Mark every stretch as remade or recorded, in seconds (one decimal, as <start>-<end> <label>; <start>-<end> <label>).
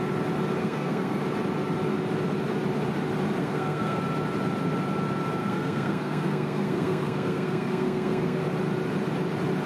0.0-0.6 recorded; 0.6-1.2 remade; 1.2-3.4 recorded; 3.4-4.0 remade; 4.0-5.4 recorded; 5.4-8.4 remade; 8.4-9.7 recorded